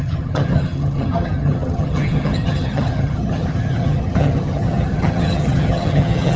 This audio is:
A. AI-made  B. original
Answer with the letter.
A